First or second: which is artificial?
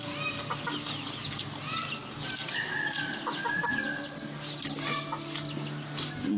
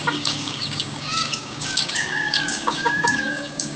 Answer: second